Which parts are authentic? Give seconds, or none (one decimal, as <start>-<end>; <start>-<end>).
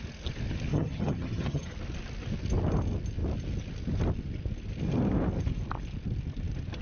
0.0-0.7; 1.7-6.8